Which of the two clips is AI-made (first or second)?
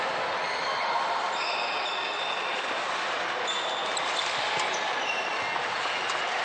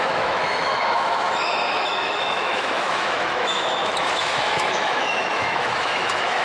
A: second